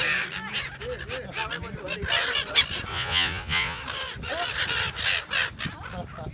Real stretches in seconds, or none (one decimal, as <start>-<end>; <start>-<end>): 0.0-2.9; 3.8-6.3